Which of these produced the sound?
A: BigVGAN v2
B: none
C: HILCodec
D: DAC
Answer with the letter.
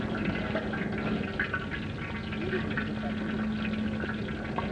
B